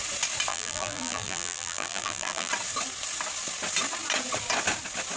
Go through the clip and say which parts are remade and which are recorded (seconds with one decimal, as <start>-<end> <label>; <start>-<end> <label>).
0.0-0.5 recorded; 0.5-2.5 remade; 2.5-5.2 recorded